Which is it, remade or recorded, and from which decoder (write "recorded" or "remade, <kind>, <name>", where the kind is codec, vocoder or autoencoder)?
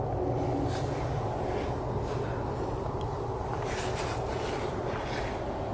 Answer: recorded